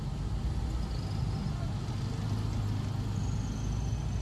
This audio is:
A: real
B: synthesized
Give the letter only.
A